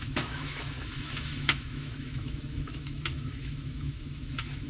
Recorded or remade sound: remade